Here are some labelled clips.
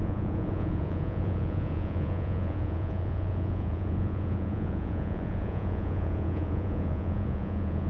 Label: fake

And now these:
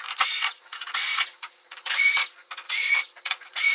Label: fake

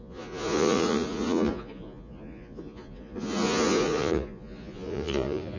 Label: fake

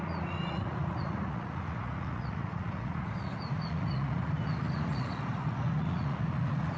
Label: fake